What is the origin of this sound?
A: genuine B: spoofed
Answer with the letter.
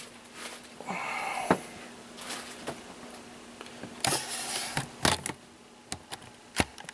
A